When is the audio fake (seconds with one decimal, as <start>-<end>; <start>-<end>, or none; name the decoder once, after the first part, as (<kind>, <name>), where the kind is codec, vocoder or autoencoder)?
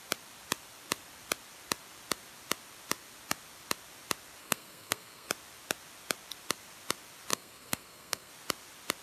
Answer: 4.4-5.3 (codec, SNAC); 7.3-8.3